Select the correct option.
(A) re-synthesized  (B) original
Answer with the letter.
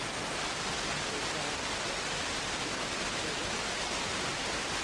B